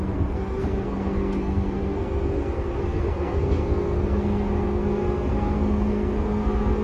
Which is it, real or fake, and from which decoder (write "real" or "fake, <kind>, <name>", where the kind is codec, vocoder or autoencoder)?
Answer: fake, codec, SNAC